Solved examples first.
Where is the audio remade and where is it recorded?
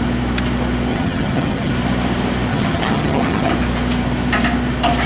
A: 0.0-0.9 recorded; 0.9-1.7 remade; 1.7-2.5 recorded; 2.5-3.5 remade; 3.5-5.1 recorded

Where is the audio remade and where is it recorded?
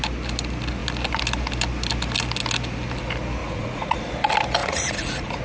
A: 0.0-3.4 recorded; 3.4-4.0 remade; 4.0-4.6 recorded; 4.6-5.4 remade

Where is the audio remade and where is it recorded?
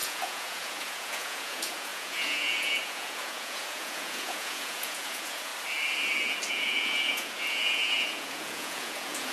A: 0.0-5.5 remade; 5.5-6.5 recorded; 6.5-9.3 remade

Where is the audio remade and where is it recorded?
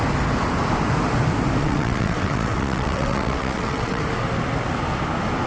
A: 0.0-1.6 recorded; 1.6-4.0 remade; 4.0-5.5 recorded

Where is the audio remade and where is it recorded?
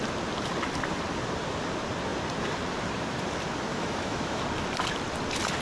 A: 0.0-3.7 recorded; 3.7-4.4 remade; 4.4-5.6 recorded